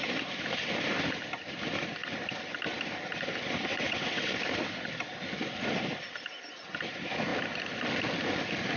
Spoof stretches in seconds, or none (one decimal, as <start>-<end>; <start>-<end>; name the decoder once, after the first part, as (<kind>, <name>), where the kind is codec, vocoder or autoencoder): 3.7-4.3 (vocoder, WaveNeXt)